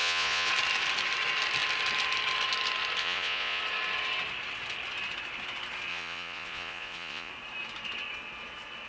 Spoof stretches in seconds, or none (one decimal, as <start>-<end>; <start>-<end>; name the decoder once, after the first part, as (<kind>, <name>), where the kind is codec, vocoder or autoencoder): 0.0-0.5 (vocoder, Vocos); 3.0-3.6; 5.9-7.3